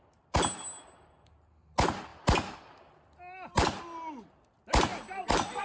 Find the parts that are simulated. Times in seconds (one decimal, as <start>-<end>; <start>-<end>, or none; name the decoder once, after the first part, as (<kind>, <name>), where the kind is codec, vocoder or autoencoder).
4.9-5.6 (vocoder, BigVGAN v2)